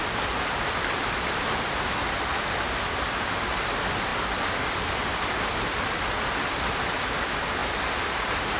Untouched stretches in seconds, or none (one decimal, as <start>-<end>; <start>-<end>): 0.0-8.6